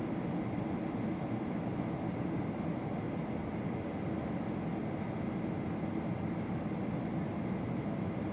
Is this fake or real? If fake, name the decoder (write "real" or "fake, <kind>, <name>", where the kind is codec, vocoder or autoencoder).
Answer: real